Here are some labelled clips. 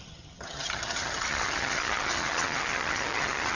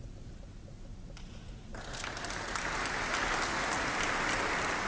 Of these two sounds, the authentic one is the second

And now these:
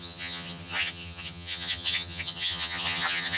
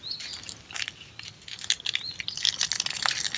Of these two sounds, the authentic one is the second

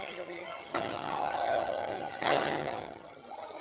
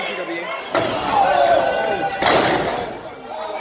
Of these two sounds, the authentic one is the second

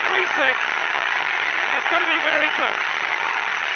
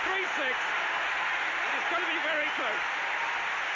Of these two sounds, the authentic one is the second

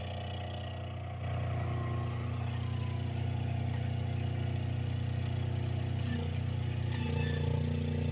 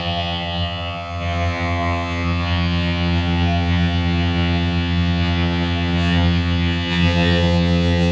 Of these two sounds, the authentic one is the first